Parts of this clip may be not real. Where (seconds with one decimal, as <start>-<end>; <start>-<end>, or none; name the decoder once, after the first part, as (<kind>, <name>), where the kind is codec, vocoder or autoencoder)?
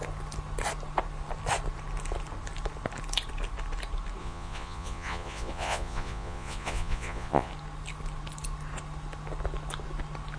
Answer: 4.2-7.5 (vocoder, Vocos)